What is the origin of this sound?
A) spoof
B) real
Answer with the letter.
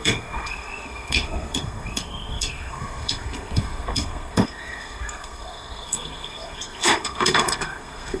A